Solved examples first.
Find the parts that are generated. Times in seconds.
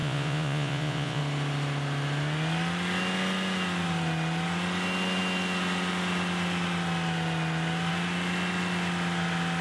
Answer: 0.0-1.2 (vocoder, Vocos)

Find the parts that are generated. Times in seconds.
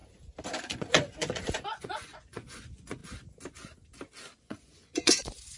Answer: 0.6-3.0 (vocoder, Vocos); 4.4-5.6